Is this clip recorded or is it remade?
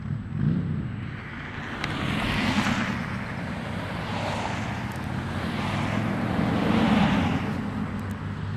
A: recorded